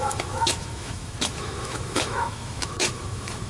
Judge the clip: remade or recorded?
remade